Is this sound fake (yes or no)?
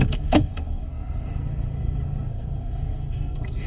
yes